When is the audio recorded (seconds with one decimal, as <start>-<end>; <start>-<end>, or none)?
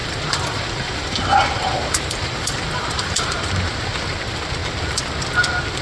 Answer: 3.5-5.8